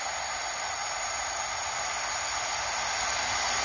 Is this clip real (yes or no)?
yes